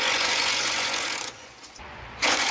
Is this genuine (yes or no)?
no